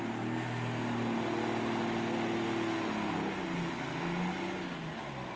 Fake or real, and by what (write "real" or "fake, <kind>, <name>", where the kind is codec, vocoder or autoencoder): real